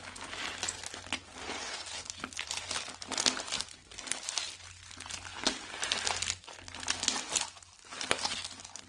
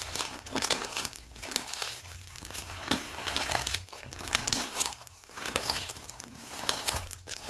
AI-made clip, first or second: second